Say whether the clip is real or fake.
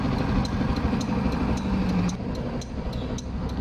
real